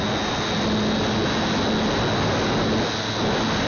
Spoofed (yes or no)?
no